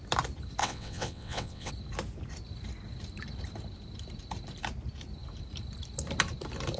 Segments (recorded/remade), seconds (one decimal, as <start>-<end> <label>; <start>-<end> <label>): 0.0-0.6 recorded; 0.6-1.7 remade; 1.7-6.8 recorded